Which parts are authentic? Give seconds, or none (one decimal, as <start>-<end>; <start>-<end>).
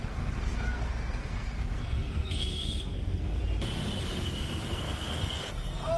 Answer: 3.4-4.0